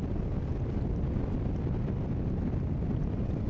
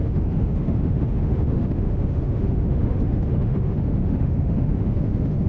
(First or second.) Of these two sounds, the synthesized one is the second